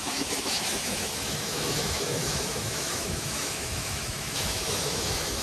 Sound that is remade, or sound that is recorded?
remade